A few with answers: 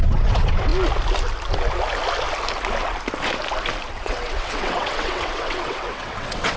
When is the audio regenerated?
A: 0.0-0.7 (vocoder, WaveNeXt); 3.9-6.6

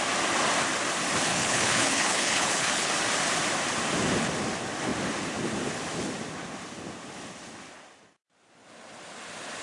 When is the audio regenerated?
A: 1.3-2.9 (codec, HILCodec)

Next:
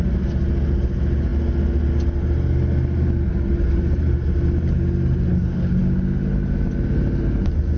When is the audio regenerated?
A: 5.3-5.8 (codec, HILCodec)

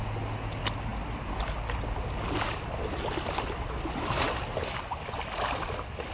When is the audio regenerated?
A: none

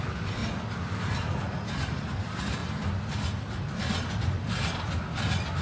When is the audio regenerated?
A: 0.0-2.6 (vocoder, BigVGAN v2); 5.1-5.6